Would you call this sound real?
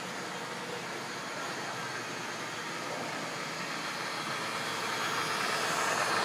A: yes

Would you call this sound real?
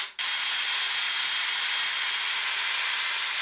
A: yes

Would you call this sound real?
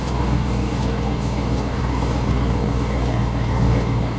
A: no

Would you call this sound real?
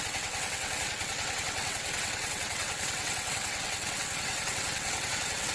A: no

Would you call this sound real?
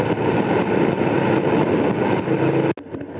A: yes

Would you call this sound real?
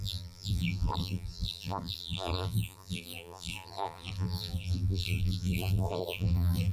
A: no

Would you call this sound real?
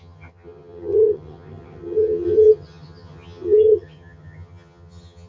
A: no